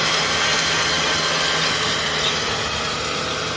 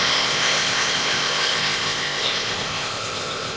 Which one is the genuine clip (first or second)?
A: first